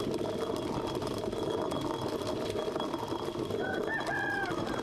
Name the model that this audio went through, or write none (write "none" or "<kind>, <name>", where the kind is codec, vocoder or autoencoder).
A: none